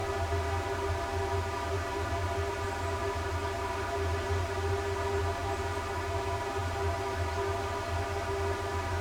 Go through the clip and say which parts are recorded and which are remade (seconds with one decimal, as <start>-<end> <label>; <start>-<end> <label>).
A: 0.0-9.0 recorded